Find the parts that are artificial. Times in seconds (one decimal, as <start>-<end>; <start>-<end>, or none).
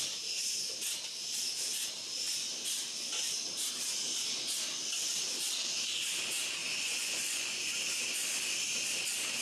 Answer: 6.6-7.8